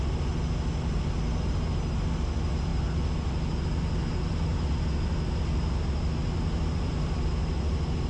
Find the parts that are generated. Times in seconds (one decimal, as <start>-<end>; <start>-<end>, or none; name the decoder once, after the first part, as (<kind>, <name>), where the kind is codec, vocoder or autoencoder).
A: none